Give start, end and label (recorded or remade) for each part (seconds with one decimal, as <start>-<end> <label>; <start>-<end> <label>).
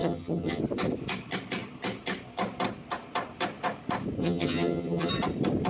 0.0-0.6 remade; 0.6-4.2 recorded; 4.2-5.1 remade; 5.1-5.7 recorded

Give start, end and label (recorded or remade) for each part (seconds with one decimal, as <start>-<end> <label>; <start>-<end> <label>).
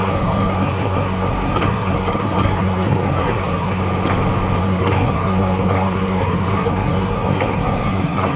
0.0-3.8 remade; 3.8-4.6 recorded; 4.6-8.4 remade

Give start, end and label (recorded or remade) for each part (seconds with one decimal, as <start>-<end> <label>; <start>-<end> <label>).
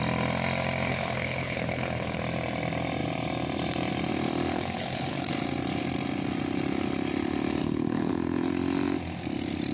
0.0-0.9 recorded; 0.9-2.2 remade; 2.2-4.5 recorded; 4.5-5.3 remade; 5.3-7.6 recorded; 7.6-8.1 remade; 8.1-9.7 recorded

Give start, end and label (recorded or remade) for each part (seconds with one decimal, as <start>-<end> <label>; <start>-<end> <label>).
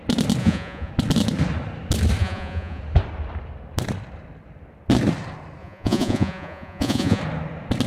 0.0-0.4 recorded; 0.4-0.9 remade; 0.9-2.2 recorded; 2.2-2.8 remade; 2.8-5.6 recorded; 5.6-7.2 remade; 7.2-7.9 recorded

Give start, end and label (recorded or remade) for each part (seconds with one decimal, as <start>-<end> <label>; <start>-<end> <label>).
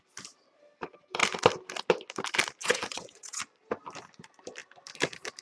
0.0-2.6 recorded; 2.6-3.4 remade; 3.4-5.4 recorded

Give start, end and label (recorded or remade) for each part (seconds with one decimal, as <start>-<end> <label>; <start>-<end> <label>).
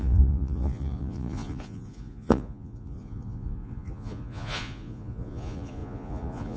0.0-6.6 remade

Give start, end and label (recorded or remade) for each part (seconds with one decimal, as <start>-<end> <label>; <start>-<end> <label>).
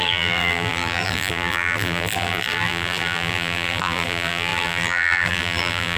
0.0-6.0 remade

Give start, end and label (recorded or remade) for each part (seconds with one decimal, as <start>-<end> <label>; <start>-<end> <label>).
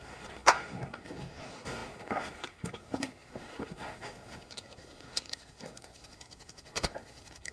0.0-7.5 remade